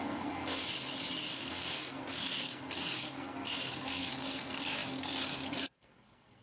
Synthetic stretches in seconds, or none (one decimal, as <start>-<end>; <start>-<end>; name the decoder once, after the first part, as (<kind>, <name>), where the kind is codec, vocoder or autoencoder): 0.0-0.6 (codec, SNAC); 1.3-6.4